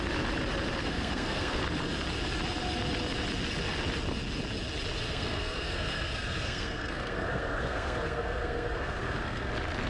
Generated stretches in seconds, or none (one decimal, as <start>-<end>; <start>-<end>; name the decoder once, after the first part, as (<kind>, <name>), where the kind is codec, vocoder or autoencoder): 0.8-1.6 (codec, SNAC); 5.1-9.5